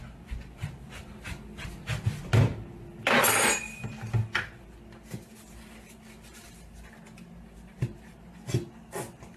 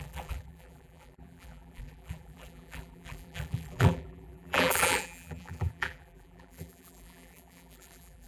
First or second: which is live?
first